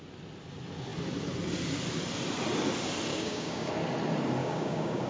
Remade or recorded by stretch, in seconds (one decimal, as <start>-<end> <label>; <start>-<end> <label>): 0.0-3.1 recorded; 3.1-3.7 remade; 3.7-4.4 recorded; 4.4-5.1 remade